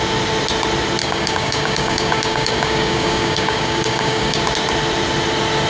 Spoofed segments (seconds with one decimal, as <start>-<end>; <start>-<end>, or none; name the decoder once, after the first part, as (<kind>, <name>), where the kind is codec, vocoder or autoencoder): 1.0-4.4 (codec, DAC)